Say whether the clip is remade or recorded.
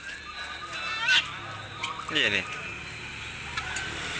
remade